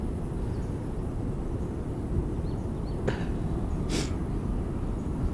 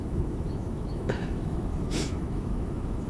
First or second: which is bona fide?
first